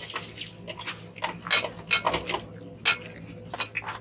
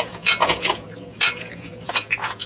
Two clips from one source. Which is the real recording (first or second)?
first